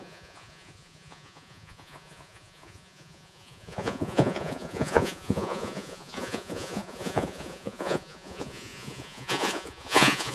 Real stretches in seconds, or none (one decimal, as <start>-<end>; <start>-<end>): none